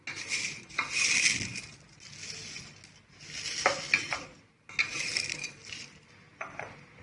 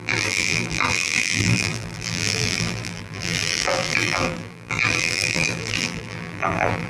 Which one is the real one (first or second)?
first